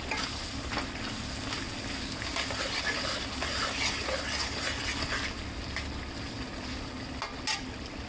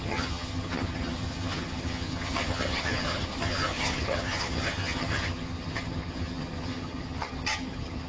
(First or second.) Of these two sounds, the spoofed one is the second